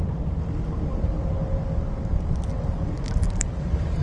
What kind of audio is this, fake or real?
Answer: real